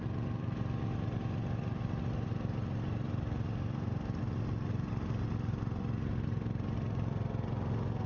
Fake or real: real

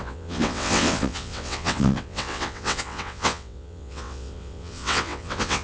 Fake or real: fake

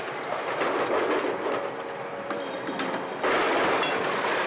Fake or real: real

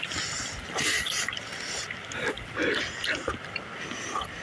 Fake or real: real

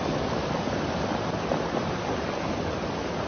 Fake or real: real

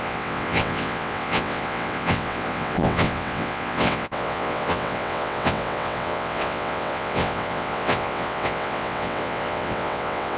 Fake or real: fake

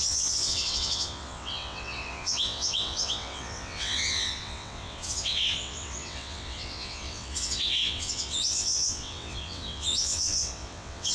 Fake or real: fake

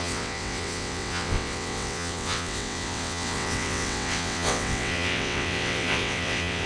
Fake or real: fake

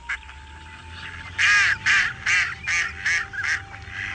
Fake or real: real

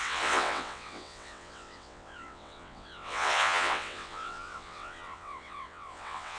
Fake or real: fake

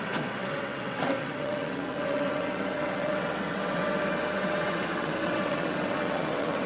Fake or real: fake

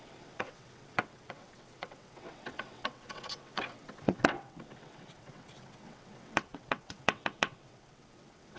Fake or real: fake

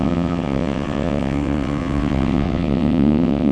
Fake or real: fake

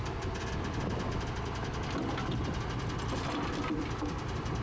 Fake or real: real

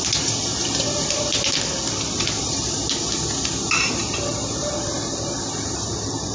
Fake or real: real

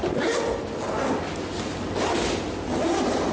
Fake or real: real